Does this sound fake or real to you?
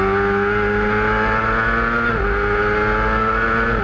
real